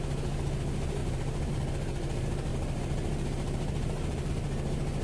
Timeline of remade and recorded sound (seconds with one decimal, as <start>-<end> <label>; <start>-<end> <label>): 0.0-1.0 recorded; 1.0-1.5 remade; 1.5-2.5 recorded; 2.5-4.3 remade; 4.3-5.0 recorded